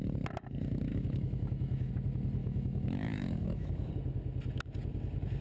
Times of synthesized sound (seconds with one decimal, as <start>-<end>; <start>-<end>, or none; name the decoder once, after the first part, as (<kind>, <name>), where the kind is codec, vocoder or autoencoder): 0.9-1.9 (autoencoder, DAC-VAE); 2.4-3.9

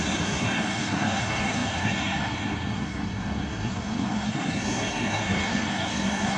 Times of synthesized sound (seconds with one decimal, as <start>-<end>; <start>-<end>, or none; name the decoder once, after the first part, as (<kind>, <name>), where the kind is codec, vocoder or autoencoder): 0.0-6.4 (codec, SNAC)

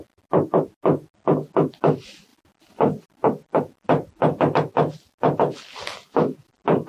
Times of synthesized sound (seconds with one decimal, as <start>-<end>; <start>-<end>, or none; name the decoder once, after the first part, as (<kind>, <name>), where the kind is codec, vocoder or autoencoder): none